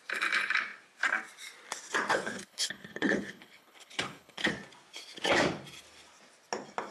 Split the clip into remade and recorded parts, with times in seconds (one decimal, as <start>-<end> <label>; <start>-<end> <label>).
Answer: 0.0-2.1 recorded; 2.1-4.5 remade; 4.5-6.9 recorded